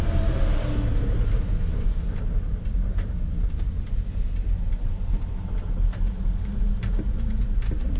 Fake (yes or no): no